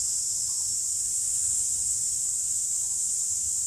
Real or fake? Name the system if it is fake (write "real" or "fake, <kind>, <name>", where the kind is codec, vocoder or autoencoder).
fake, vocoder, BigVGAN v2